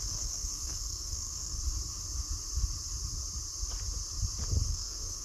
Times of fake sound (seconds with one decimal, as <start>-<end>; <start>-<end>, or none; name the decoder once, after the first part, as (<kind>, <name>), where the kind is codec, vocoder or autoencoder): 0.0-1.6 (codec, SNAC); 4.7-5.2